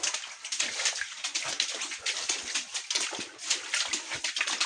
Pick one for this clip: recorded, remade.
recorded